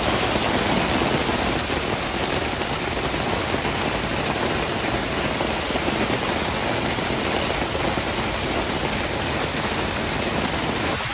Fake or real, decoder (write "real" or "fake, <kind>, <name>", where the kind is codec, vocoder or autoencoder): real